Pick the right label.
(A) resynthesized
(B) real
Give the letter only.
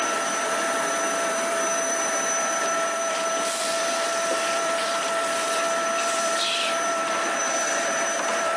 A